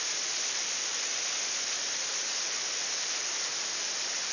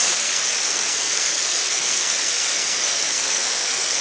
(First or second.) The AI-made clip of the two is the second